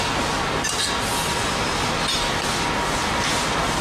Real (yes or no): yes